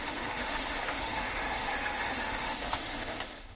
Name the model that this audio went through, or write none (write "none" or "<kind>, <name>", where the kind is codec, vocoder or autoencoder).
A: autoencoder, DAC-VAE